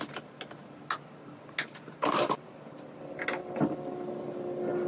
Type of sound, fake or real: real